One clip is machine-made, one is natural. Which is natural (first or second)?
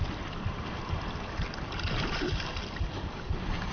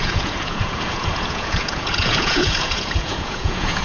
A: first